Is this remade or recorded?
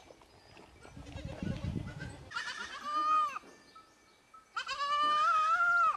recorded